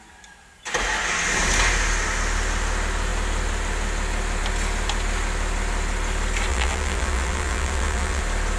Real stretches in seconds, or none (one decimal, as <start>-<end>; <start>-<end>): 0.0-6.5; 8.2-8.6